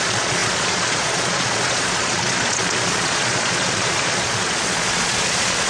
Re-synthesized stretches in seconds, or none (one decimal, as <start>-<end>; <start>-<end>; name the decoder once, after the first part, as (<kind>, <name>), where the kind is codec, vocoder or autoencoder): 0.0-5.7 (vocoder, Vocos)